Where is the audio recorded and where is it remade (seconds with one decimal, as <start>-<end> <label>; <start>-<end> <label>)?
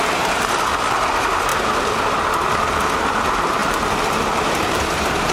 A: 0.0-1.5 remade; 1.5-2.7 recorded; 2.7-3.6 remade; 3.6-4.7 recorded; 4.7-5.3 remade